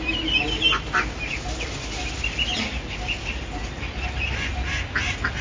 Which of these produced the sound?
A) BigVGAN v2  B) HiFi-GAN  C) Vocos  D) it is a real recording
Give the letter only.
D